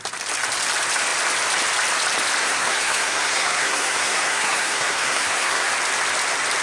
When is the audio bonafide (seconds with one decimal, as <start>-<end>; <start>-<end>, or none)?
0.0-2.4; 5.7-6.6